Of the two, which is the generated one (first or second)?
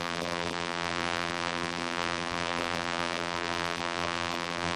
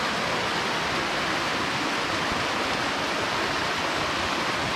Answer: first